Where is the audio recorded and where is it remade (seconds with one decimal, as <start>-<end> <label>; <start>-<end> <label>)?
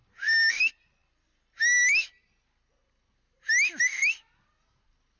0.0-5.2 recorded